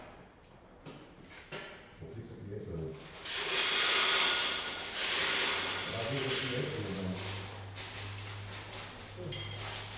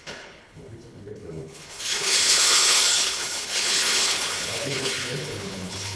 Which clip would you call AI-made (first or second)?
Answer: second